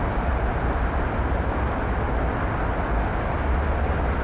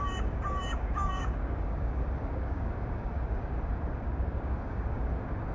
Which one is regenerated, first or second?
second